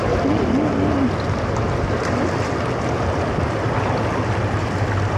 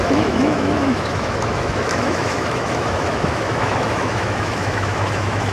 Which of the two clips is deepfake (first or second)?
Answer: second